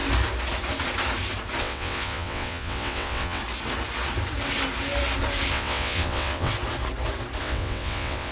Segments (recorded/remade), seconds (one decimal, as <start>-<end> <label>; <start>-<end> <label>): 0.0-1.6 recorded; 1.6-3.4 remade; 3.4-5.5 recorded; 5.5-6.5 remade; 6.5-7.4 recorded; 7.4-8.3 remade